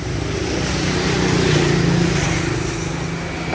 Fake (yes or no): no